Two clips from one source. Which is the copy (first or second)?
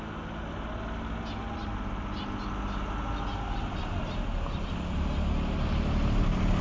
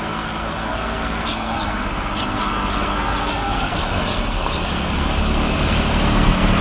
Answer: second